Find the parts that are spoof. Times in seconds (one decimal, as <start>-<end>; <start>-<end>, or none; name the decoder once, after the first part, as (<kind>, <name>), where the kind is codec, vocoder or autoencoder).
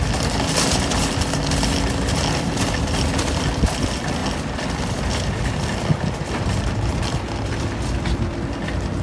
none